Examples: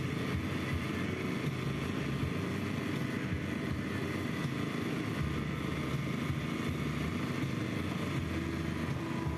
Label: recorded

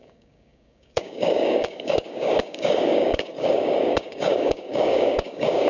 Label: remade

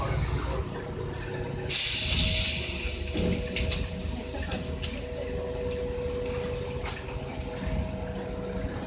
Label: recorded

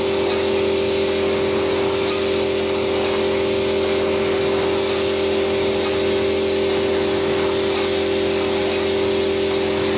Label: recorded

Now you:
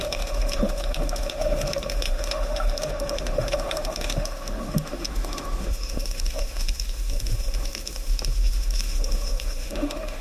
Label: remade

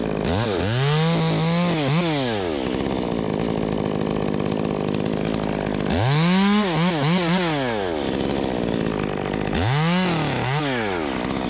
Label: recorded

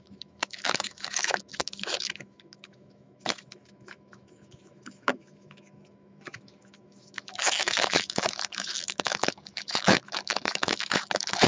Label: remade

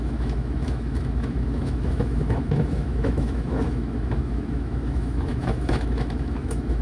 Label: remade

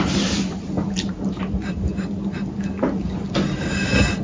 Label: recorded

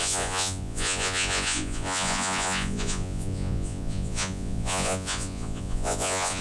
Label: remade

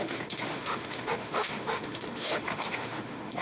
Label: remade